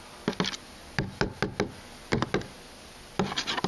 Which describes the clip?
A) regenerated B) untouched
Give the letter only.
B